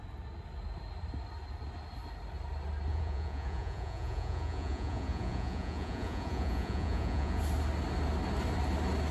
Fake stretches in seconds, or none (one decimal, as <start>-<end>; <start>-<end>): 2.9-7.4